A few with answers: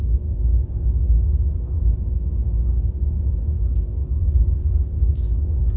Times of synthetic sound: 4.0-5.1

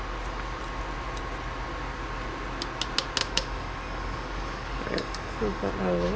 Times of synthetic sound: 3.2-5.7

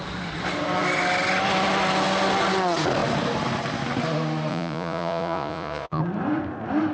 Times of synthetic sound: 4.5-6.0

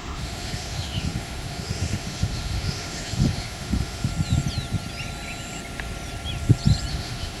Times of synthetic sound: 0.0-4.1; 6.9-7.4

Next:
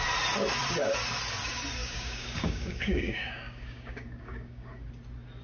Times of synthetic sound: 1.8-4.7

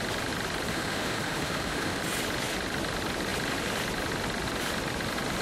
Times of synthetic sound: 0.7-2.0

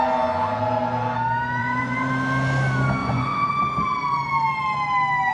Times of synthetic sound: 1.6-2.1; 3.0-3.5

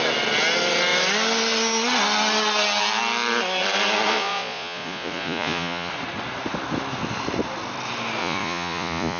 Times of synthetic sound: 4.1-5.9; 8.2-9.2